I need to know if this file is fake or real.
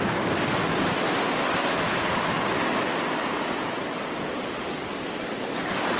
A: real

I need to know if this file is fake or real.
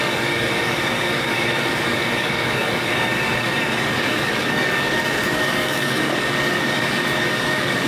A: fake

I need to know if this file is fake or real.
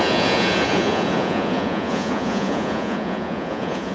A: fake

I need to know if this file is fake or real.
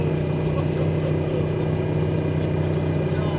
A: real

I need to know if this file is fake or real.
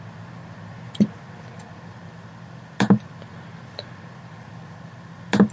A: real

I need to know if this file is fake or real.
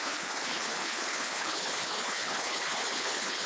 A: fake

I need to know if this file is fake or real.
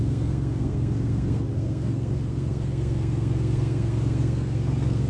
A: fake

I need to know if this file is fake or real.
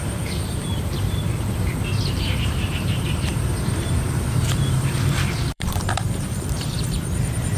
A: fake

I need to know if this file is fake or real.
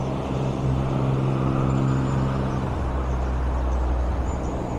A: real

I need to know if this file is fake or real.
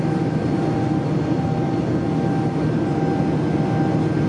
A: real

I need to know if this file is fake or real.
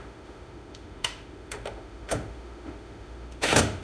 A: fake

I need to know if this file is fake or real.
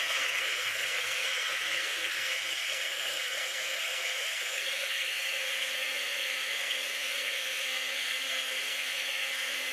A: fake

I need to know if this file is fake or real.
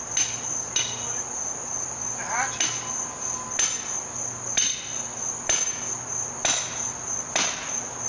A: real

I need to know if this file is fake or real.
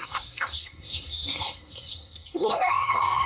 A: fake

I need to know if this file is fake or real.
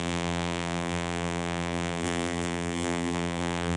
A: fake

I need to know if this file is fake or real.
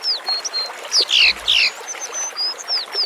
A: real